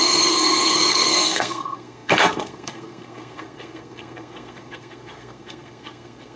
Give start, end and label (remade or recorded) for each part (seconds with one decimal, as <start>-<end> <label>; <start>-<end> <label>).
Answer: 0.0-6.4 remade